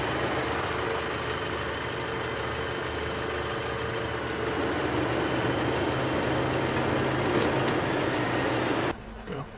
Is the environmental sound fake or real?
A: real